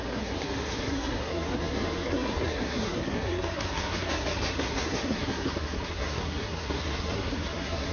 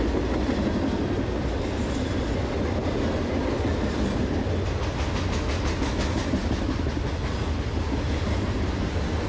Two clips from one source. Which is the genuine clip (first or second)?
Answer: second